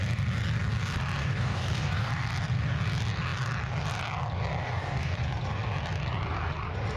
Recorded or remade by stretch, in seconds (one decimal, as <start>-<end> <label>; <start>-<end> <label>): 0.0-1.2 recorded; 1.2-2.1 remade; 2.1-4.6 recorded; 4.6-5.2 remade; 5.2-7.0 recorded